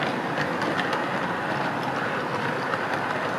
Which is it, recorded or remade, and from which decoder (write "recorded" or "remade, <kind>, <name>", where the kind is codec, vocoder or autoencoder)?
recorded